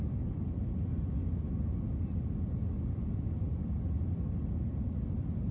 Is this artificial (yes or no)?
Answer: no